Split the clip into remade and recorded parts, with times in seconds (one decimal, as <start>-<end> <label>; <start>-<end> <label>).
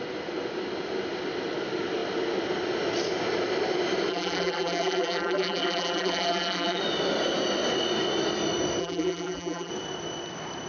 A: 0.0-4.1 recorded; 4.1-6.8 remade; 6.8-8.8 recorded; 8.8-9.7 remade; 9.7-10.7 recorded